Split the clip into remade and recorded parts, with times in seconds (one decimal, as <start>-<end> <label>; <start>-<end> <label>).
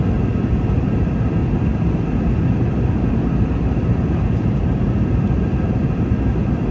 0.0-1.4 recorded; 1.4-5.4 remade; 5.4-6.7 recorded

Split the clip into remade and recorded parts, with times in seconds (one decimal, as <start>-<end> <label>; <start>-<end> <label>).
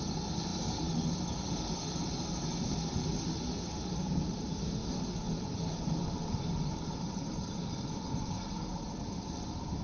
0.0-4.8 recorded; 4.8-8.4 remade; 8.4-9.8 recorded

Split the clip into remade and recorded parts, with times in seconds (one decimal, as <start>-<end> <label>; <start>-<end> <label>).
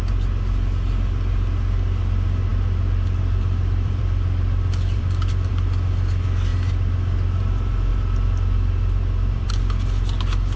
0.0-2.5 recorded; 2.5-5.5 remade; 5.5-7.9 recorded; 7.9-9.5 remade; 9.5-10.6 recorded